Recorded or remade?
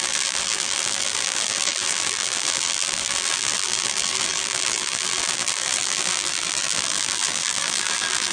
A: remade